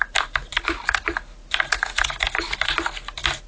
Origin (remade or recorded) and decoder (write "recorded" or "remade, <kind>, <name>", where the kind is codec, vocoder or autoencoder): recorded